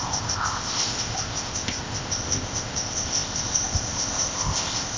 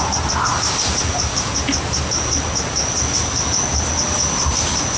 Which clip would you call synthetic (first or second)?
first